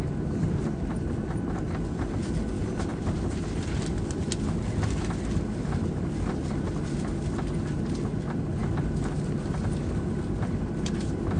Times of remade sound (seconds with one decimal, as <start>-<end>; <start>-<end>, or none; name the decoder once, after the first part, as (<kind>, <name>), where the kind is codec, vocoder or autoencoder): none